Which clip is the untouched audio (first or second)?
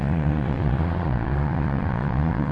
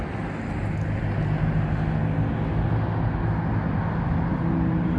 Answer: second